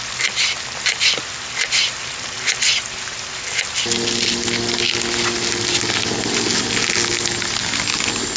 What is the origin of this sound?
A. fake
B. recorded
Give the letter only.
B